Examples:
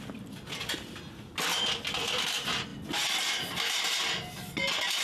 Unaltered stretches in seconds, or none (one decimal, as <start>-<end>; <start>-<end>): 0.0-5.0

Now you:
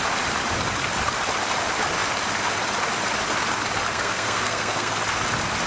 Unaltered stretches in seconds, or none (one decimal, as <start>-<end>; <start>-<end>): 0.0-3.9; 5.0-5.7

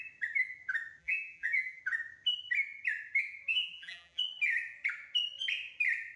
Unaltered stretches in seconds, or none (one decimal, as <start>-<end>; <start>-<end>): 0.0-1.0; 1.8-3.5; 4.2-6.2

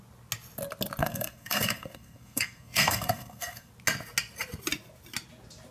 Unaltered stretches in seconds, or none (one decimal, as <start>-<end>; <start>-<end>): 0.0-1.0; 3.7-5.7